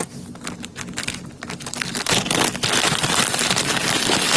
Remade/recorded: recorded